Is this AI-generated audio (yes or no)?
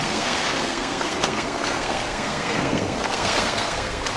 yes